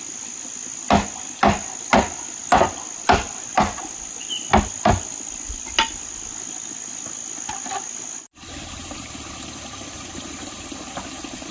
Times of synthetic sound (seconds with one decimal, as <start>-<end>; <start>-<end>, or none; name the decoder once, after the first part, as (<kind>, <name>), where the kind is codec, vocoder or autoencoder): none